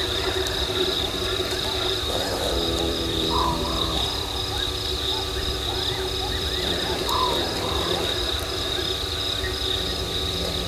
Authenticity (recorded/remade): remade